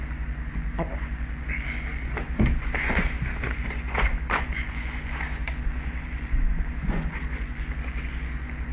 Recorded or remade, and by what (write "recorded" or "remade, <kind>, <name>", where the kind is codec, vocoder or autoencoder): remade, vocoder, Vocos